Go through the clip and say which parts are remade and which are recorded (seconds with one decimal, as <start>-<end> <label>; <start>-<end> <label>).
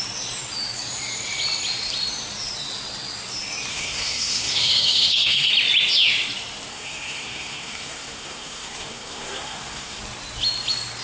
0.0-3.7 recorded; 3.7-5.5 remade; 5.5-6.7 recorded; 6.7-10.0 remade; 10.0-11.0 recorded